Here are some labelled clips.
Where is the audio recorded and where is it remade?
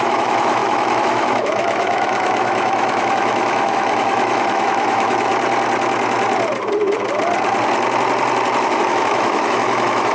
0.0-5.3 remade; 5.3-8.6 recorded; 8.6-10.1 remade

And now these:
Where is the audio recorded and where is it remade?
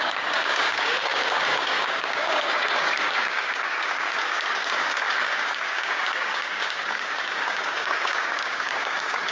0.0-9.3 remade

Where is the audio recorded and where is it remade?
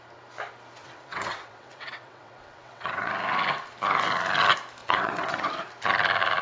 0.0-0.8 recorded; 0.8-3.1 remade; 3.1-4.8 recorded; 4.8-5.5 remade; 5.5-6.4 recorded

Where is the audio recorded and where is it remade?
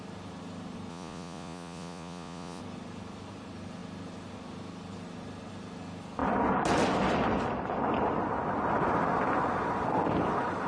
0.0-0.9 recorded; 0.9-2.6 remade; 2.6-10.7 recorded